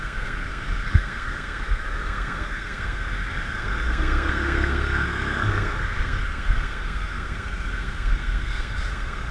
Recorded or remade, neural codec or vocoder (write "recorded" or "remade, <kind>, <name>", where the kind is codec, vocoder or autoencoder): remade, codec, SNAC